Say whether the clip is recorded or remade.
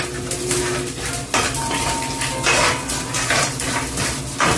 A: recorded